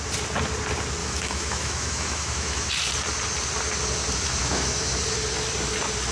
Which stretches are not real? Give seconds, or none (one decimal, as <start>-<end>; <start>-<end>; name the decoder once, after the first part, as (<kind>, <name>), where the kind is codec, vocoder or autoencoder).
1.0-2.7 (autoencoder, DAC-VAE); 4.4-5.0